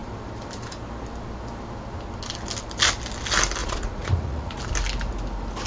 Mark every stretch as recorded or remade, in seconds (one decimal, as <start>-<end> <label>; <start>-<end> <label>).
0.0-3.6 recorded; 3.6-4.6 remade; 4.6-5.7 recorded